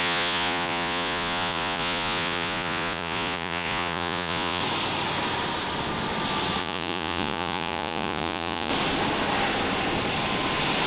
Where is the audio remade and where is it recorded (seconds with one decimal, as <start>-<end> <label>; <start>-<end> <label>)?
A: 0.0-4.6 remade; 4.6-6.6 recorded; 6.6-8.7 remade; 8.7-10.9 recorded